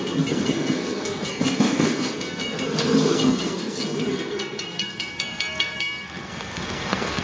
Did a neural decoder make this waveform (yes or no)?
yes